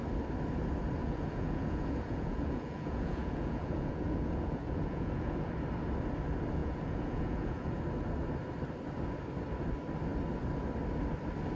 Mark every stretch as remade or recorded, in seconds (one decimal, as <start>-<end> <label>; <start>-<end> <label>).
0.0-1.0 recorded; 1.0-5.5 remade; 5.5-6.6 recorded; 6.6-7.8 remade; 7.8-11.5 recorded